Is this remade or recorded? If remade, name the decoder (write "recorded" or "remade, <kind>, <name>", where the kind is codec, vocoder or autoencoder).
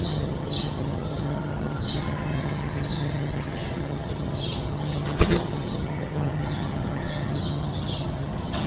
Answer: remade, vocoder, HiFi-GAN